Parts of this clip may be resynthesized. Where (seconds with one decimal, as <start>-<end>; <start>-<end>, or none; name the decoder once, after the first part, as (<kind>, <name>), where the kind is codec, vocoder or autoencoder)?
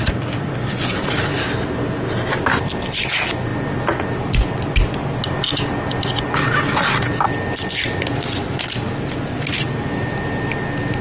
none